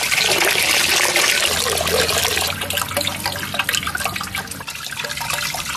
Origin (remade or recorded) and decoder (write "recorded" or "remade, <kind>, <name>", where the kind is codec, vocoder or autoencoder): recorded